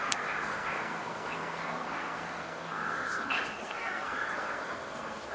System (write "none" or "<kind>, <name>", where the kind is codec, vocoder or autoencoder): codec, SNAC